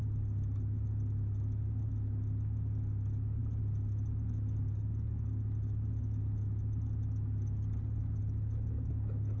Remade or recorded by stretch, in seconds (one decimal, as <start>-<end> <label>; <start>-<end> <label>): 0.0-9.4 recorded